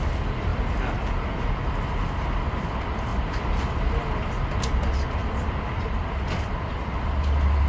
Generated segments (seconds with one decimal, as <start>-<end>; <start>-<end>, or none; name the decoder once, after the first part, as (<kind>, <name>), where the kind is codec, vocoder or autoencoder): none